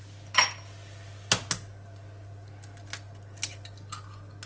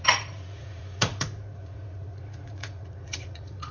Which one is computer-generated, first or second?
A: second